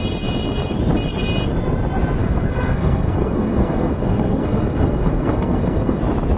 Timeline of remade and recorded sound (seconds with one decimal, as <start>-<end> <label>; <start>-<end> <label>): 0.0-2.2 recorded; 2.2-6.0 remade; 6.0-6.4 recorded